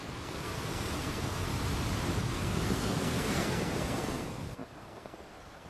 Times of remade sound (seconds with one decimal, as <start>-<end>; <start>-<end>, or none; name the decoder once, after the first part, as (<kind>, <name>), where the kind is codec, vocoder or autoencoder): 0.0-1.5 (codec, SNAC); 2.2-5.7